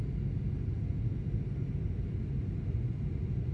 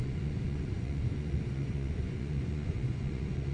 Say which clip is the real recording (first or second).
first